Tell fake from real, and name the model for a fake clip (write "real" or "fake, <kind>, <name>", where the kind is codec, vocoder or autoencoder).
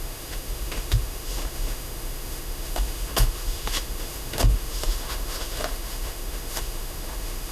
fake, autoencoder, DAC-VAE